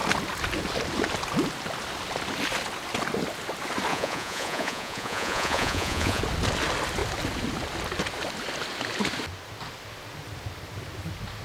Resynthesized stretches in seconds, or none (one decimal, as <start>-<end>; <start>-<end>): 3.9-6.2